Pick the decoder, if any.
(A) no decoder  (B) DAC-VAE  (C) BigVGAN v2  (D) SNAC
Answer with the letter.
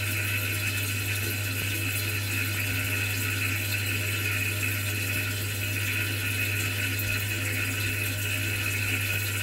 A